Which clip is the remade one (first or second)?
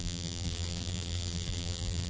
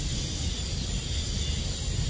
first